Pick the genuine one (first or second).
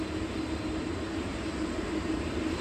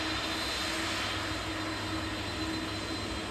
second